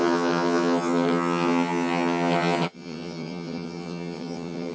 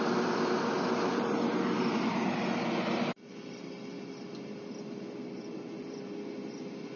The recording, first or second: second